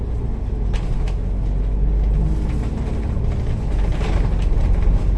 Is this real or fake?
real